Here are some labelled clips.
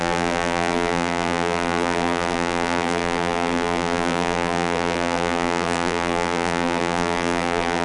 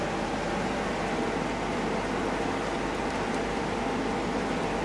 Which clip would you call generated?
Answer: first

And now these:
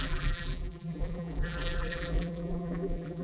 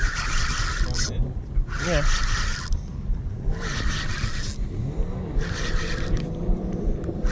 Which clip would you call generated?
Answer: first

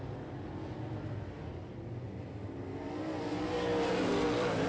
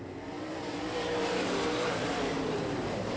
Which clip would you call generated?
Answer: second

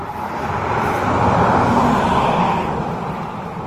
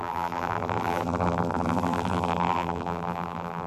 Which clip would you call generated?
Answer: second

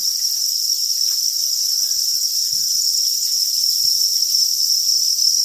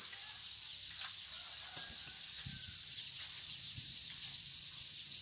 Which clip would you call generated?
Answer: first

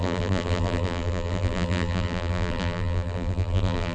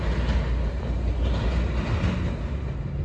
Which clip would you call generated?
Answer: first